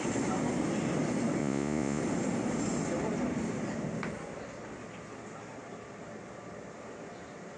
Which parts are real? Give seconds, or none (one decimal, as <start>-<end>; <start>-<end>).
0.0-1.4; 2.0-7.6